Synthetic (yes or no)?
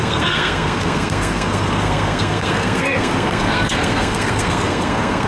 yes